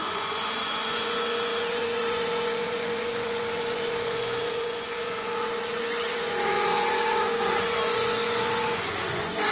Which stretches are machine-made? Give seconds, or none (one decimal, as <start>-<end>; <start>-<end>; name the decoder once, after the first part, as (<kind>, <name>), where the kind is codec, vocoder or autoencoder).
0.0-9.5 (vocoder, Vocos)